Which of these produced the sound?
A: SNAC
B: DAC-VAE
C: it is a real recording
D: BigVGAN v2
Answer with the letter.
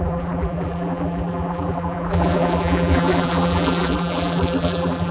D